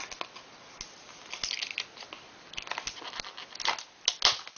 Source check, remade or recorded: recorded